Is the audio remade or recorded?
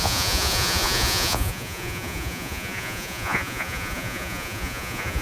remade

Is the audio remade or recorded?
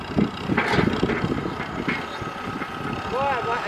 recorded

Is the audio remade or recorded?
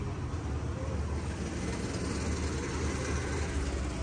recorded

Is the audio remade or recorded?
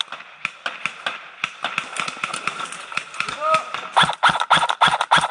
recorded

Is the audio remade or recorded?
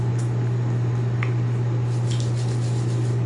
recorded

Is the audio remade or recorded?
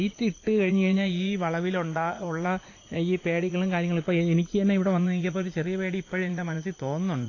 remade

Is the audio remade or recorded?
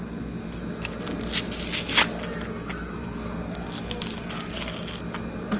recorded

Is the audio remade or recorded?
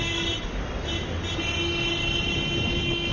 recorded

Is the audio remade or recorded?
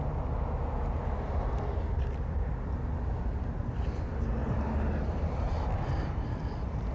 recorded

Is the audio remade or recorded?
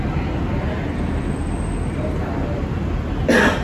recorded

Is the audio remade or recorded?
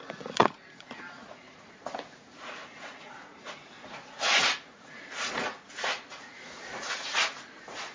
remade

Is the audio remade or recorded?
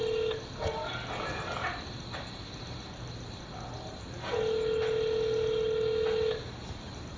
recorded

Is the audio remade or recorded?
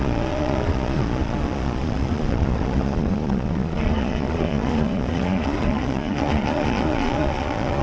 remade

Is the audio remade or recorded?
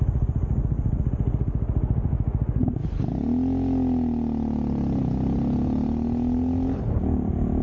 recorded